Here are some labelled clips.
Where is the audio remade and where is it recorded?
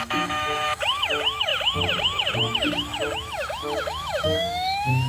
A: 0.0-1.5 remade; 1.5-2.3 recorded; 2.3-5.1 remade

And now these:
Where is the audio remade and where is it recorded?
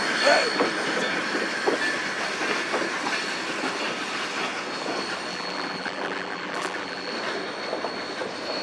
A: 0.0-5.3 recorded; 5.3-7.1 remade; 7.1-8.6 recorded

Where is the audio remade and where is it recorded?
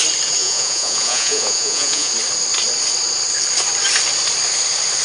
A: 0.0-0.4 recorded; 0.4-2.1 remade; 2.1-5.0 recorded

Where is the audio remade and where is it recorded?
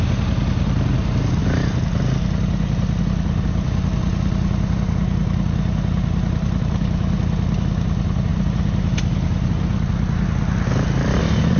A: 0.0-11.6 recorded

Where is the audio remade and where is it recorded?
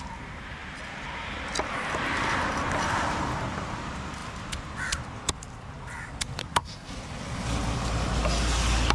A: 0.0-6.4 recorded; 6.4-6.9 remade; 6.9-8.9 recorded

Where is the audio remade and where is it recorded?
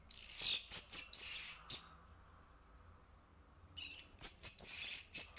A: 0.0-3.3 recorded; 3.3-5.4 remade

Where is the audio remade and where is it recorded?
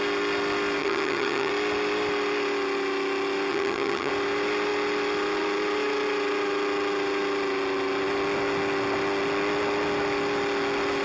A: 0.0-0.8 recorded; 0.8-1.5 remade; 1.5-3.5 recorded; 3.5-4.1 remade; 4.1-11.0 recorded